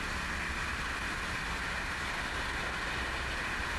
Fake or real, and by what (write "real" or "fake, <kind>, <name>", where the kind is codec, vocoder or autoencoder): real